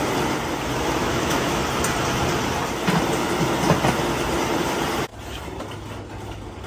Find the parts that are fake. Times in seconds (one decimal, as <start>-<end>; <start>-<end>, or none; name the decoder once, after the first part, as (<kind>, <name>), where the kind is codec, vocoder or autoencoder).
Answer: 1.0-1.6 (autoencoder, DAC-VAE)